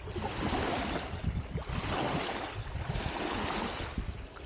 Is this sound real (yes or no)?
yes